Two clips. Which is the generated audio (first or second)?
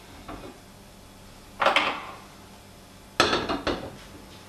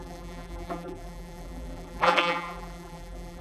second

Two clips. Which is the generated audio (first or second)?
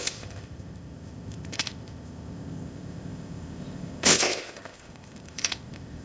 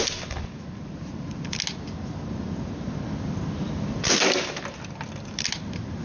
first